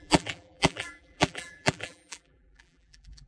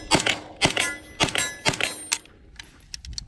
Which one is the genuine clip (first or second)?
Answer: second